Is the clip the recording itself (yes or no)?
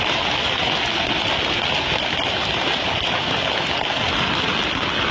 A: yes